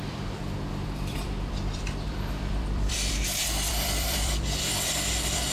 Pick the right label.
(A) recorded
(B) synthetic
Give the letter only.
B